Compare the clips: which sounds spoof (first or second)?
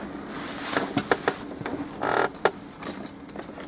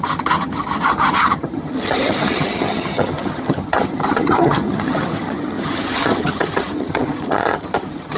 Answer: second